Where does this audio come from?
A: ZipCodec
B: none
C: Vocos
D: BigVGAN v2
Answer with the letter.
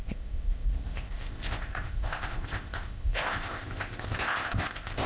A